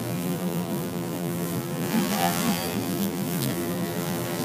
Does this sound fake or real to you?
fake